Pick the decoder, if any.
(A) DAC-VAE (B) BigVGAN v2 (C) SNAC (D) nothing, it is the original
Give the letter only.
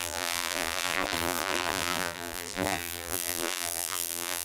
B